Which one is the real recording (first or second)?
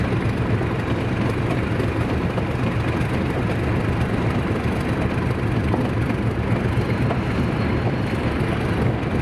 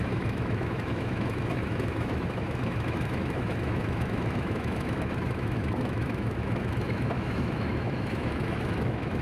first